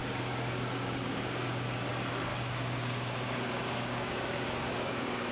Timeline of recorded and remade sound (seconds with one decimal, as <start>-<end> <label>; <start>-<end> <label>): 0.0-1.9 remade; 1.9-2.3 recorded; 2.3-5.3 remade